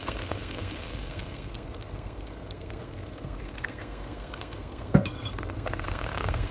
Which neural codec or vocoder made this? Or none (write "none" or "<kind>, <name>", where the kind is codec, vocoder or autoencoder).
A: codec, SNAC